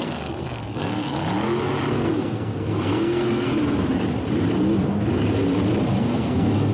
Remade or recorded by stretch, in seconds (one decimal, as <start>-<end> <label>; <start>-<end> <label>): 0.0-1.2 remade; 1.2-1.9 recorded; 1.9-3.5 remade; 3.5-6.0 recorded; 6.0-6.7 remade